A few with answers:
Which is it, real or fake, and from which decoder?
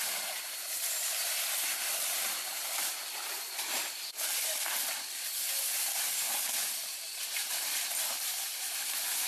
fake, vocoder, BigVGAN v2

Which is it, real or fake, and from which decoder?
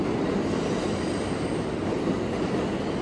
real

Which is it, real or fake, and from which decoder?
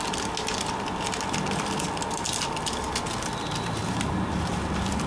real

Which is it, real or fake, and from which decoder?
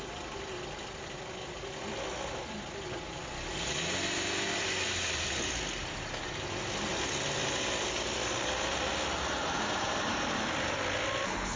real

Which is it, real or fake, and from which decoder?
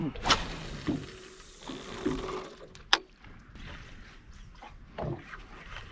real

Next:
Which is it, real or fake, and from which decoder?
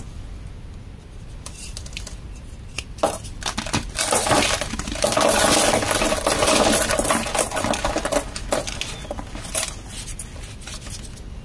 real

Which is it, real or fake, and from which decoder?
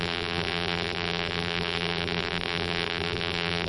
fake, vocoder, BigVGAN v2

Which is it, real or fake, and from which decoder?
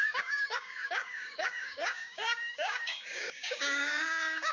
fake, codec, DAC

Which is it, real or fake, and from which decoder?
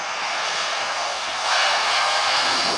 fake, codec, SNAC